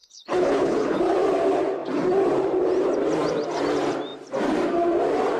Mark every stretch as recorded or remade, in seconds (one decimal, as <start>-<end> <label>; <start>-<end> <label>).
0.0-1.0 remade; 1.0-5.4 recorded